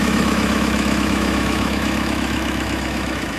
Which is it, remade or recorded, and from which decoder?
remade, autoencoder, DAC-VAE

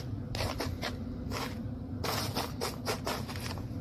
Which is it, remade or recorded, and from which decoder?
recorded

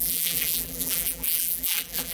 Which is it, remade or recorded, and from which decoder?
remade, vocoder, BigVGAN v2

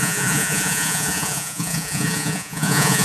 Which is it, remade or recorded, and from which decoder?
remade, vocoder, Vocos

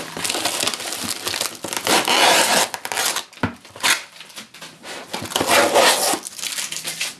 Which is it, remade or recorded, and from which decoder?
recorded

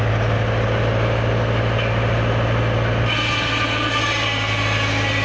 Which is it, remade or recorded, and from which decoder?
recorded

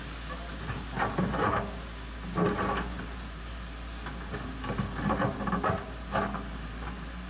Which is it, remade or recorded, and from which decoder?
recorded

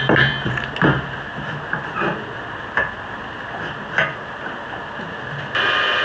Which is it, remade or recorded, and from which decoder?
recorded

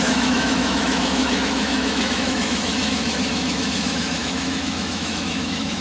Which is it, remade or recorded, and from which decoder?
remade, autoencoder, DAC-VAE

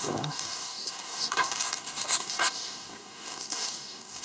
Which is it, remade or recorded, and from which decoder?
remade, codec, DAC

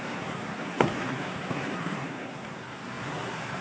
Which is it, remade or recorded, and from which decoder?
remade, codec, SNAC